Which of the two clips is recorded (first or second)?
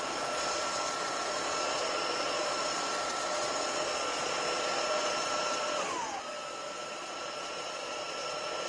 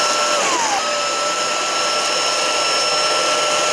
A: second